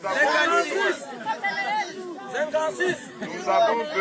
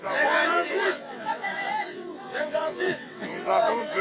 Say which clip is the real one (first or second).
first